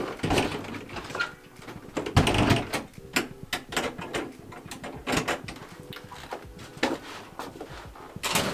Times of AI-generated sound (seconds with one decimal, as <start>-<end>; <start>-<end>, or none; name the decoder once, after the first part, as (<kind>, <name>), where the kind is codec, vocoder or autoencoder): none